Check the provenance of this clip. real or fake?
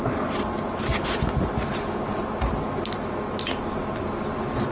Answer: real